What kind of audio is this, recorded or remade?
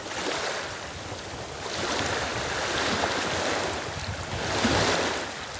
recorded